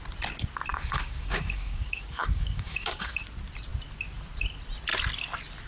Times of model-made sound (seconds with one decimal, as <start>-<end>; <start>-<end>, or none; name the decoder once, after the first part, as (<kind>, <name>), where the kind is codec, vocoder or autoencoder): 0.7-3.2 (codec, DAC)